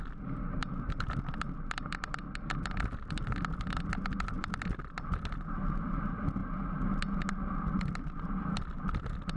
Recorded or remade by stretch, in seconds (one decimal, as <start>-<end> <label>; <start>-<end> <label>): 0.0-6.4 remade; 6.4-7.3 recorded; 7.3-9.4 remade